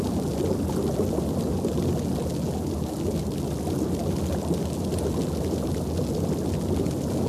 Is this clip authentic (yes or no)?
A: yes